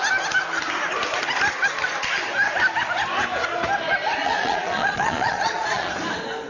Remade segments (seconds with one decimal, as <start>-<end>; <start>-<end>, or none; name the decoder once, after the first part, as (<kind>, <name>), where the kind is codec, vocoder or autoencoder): 4.2-5.9 (vocoder, Vocos)

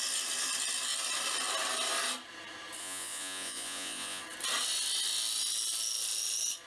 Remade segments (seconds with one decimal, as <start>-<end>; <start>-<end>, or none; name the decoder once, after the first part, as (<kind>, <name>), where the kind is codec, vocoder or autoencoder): 2.8-4.2 (vocoder, Vocos)

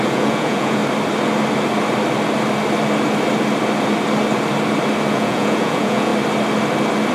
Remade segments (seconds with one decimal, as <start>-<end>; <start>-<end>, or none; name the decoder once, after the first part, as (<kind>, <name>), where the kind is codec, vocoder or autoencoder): 0.0-0.8 (vocoder, Vocos); 5.1-6.1

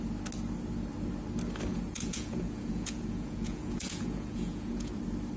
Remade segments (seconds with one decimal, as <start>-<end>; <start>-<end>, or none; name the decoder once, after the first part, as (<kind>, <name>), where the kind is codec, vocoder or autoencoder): 1.7-4.9 (vocoder, Vocos)